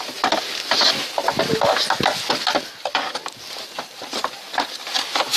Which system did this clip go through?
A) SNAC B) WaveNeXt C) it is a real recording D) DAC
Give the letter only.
C